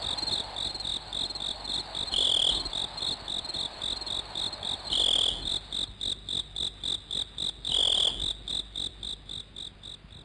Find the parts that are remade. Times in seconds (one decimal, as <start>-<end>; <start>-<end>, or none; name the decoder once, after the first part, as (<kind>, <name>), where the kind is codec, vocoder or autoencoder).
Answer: none